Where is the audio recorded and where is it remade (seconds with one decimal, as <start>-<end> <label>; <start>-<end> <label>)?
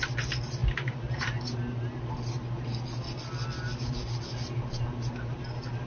0.0-5.9 recorded